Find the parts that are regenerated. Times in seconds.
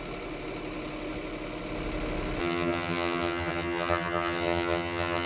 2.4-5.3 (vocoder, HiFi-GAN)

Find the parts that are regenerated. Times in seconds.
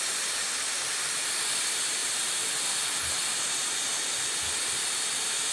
none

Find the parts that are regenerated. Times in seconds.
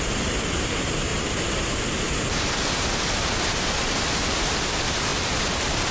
0.0-1.1 (vocoder, BigVGAN v2); 4.6-5.9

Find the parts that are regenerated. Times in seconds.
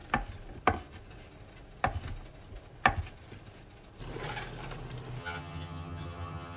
5.2-6.6 (vocoder, HiFi-GAN)